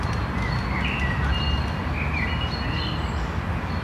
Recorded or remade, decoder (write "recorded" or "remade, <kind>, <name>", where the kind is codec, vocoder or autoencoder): recorded